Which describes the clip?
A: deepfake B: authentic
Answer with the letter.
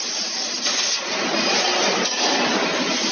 B